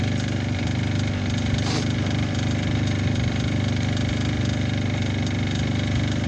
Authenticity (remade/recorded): recorded